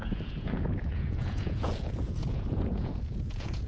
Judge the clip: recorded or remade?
remade